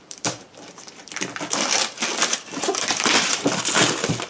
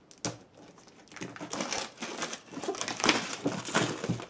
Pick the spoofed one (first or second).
first